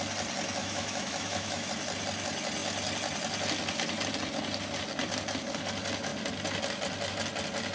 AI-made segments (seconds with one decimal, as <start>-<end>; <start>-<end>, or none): 0.6-1.7